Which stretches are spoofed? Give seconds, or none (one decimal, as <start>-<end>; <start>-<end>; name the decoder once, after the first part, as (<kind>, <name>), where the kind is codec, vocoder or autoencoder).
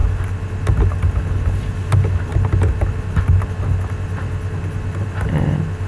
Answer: none